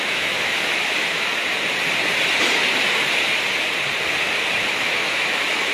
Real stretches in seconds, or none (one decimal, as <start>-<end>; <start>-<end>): 1.3-4.7